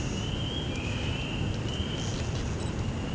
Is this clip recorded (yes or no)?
yes